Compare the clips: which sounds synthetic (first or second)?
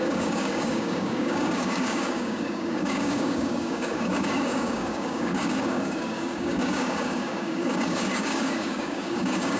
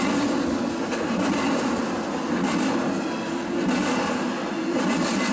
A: first